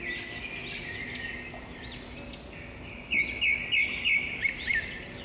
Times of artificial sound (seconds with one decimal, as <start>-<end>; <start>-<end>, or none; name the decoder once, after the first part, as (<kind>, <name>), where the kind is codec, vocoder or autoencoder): none